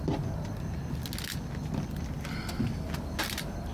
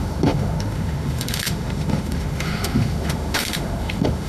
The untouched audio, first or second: first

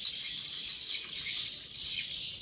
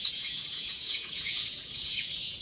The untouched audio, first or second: first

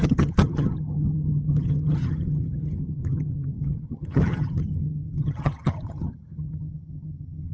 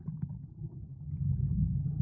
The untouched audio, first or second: second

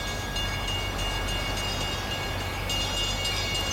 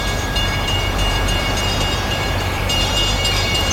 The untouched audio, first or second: first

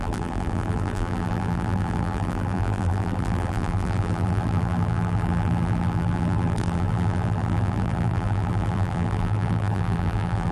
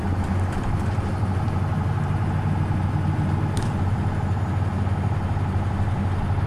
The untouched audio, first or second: second